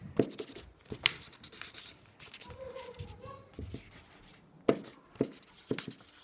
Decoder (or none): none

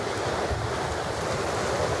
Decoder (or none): none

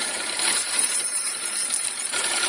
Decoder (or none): vocoder, BigVGAN v2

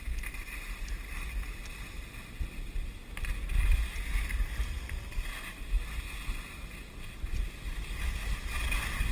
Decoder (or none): none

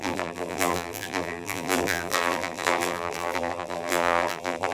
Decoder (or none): vocoder, BigVGAN v2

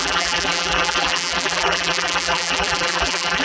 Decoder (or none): vocoder, BigVGAN v2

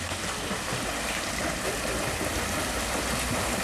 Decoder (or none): vocoder, BigVGAN v2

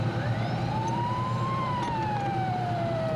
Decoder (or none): vocoder, BigVGAN v2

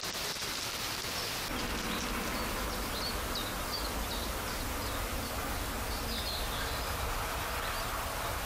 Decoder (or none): none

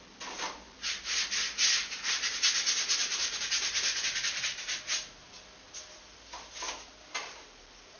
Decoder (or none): none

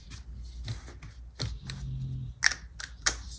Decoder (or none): none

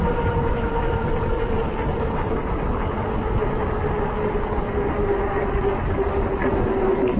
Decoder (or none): none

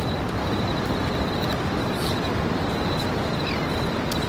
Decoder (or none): none